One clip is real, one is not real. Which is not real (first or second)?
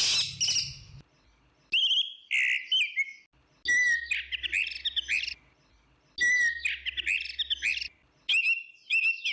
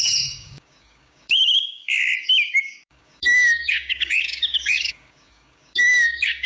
second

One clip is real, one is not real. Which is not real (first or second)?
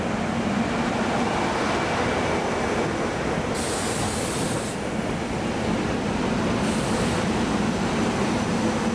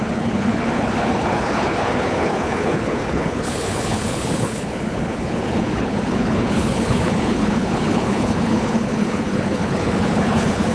second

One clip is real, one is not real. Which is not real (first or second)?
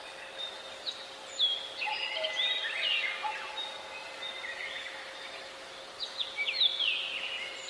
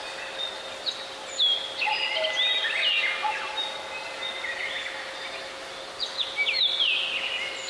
first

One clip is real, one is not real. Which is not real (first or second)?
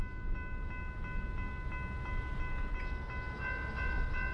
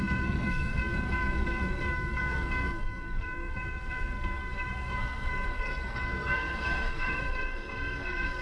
second